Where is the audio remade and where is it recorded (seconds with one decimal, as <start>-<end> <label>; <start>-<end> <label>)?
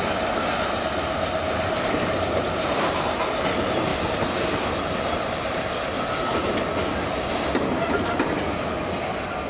0.0-9.5 recorded